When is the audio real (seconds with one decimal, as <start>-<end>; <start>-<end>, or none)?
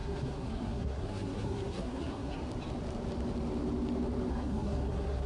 2.4-4.3